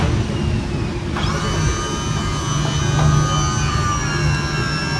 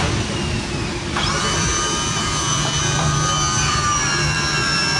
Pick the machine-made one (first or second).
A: second